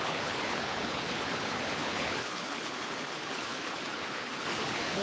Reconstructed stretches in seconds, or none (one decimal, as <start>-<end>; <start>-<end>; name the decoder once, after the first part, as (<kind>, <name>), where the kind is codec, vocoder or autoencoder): 0.0-5.0 (codec, HILCodec)